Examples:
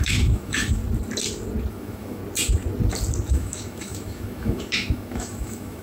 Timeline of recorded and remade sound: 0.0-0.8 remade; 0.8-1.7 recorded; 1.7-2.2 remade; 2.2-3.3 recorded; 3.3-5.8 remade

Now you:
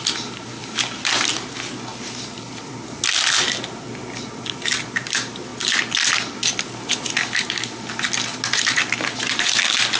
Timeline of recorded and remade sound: 0.0-10.0 recorded

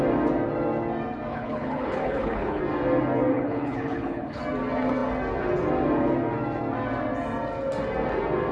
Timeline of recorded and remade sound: 0.0-1.3 recorded; 1.3-2.6 remade; 2.6-3.3 recorded; 3.3-4.4 remade; 4.4-8.5 recorded

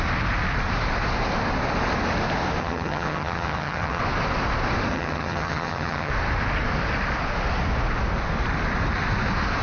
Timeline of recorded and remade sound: 0.0-2.6 recorded; 2.6-4.0 remade; 4.0-4.9 recorded; 4.9-6.1 remade; 6.1-9.6 recorded